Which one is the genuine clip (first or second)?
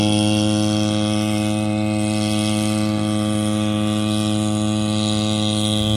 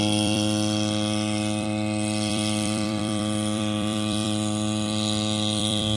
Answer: first